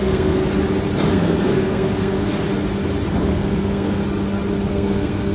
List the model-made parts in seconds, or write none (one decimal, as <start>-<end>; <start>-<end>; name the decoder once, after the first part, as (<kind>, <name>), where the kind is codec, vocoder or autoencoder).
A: 0.0-0.4 (codec, SNAC); 1.1-2.3; 3.2-4.0; 4.7-5.3